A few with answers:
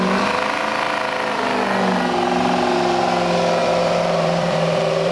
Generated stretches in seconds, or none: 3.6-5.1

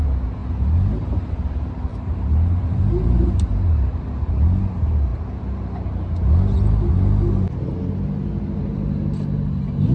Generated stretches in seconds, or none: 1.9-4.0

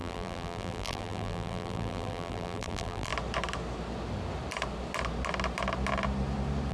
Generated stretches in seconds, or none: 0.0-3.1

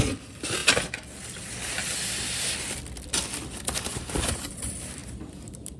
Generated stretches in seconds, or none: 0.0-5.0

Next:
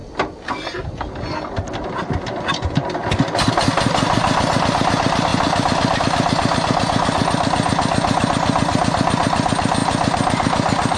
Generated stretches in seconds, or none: 5.3-6.0

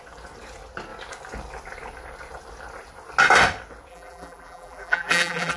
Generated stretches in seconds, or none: 3.9-5.6

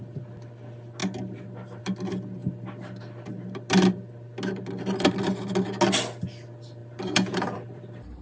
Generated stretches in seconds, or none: 6.8-8.2

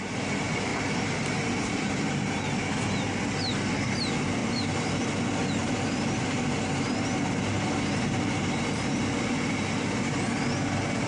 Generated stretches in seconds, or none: 0.7-2.7; 4.4-4.9; 5.6-9.0